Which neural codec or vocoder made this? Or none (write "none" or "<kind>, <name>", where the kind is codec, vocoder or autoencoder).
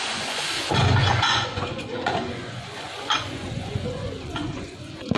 vocoder, Vocos